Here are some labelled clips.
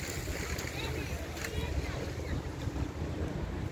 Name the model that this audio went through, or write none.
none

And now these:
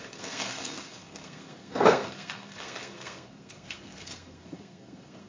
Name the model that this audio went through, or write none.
codec, SNAC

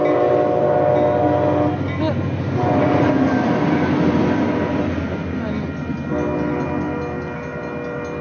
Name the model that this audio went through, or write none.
none